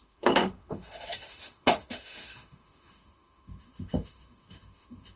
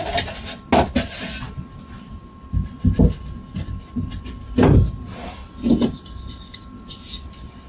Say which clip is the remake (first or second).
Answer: first